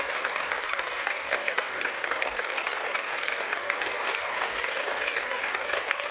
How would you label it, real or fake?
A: fake